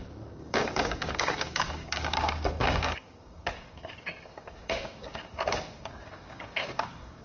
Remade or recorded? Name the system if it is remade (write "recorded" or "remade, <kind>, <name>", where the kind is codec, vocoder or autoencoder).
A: remade, codec, DAC